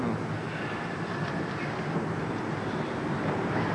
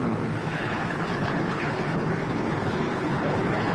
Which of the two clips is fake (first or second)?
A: second